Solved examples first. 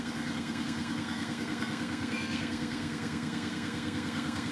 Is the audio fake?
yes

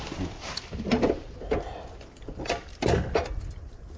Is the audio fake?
no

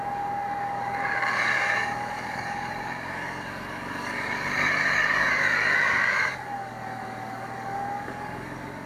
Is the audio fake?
yes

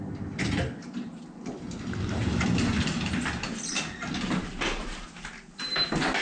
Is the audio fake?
no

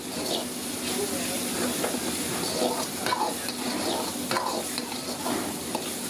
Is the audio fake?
no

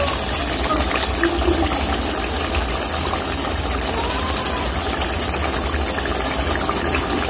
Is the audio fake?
no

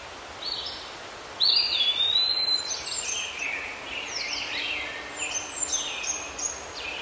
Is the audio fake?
yes